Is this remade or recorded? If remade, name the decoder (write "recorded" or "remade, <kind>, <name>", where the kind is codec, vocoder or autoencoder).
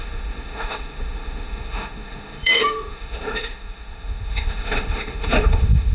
remade, autoencoder, DAC-VAE